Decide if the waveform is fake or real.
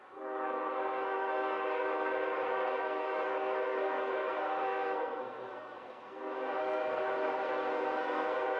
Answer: fake